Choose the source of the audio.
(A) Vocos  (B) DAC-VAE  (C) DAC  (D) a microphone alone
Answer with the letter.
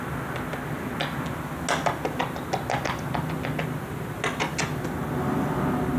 D